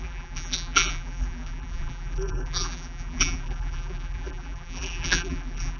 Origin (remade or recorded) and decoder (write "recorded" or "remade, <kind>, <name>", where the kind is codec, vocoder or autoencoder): remade, vocoder, BigVGAN v2